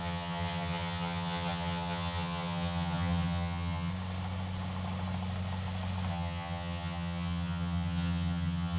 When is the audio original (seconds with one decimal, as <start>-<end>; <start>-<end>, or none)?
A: 3.9-6.1